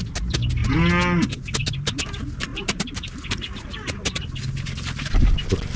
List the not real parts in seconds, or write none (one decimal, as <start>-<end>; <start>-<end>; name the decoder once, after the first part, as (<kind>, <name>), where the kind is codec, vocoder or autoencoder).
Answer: none